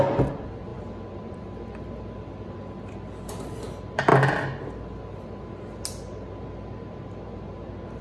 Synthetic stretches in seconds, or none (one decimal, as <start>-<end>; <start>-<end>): none